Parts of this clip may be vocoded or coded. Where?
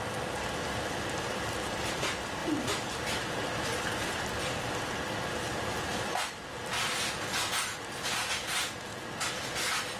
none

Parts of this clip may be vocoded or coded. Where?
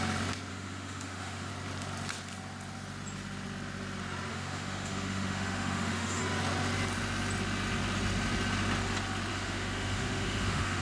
0.5-1.5; 4.3-6.2; 9.3-10.8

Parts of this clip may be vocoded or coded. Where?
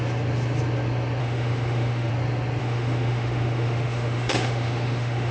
1.2-2.1; 2.6-5.3